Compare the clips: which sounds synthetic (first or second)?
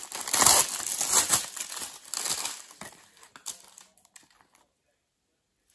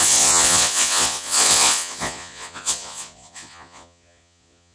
second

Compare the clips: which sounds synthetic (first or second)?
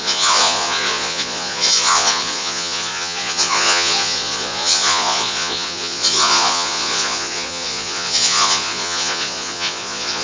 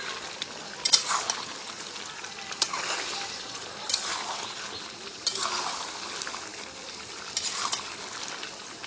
first